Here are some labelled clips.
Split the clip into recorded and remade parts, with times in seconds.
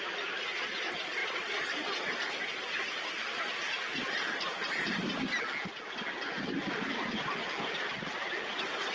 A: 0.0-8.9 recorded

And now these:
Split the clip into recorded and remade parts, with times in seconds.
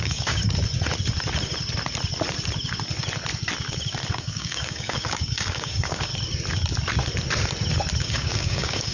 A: 0.0-0.4 remade; 0.4-4.1 recorded; 4.1-6.1 remade; 6.1-8.0 recorded; 8.0-8.9 remade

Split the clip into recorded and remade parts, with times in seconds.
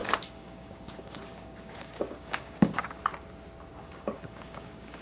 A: 0.0-3.0 remade; 3.0-3.7 recorded; 3.7-5.0 remade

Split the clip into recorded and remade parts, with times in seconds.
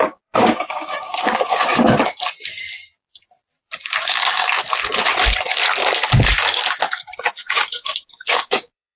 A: 0.0-1.7 remade; 1.7-4.0 recorded; 4.0-4.4 remade; 4.4-7.4 recorded; 7.4-9.0 remade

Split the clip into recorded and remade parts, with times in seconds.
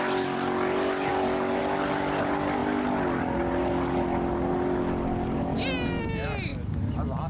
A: 0.0-1.1 recorded; 1.1-1.6 remade; 1.6-7.3 recorded